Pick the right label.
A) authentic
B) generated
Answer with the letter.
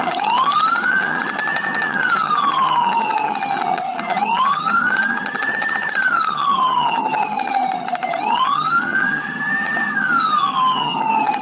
B